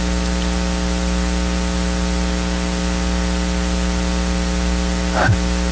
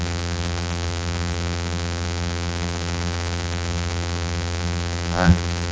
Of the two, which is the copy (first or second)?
second